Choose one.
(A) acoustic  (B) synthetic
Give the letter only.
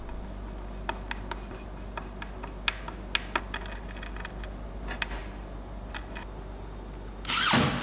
A